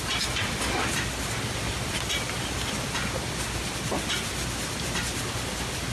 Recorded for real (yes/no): yes